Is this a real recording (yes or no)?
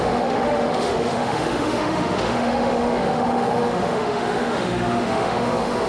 no